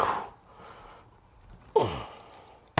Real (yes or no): yes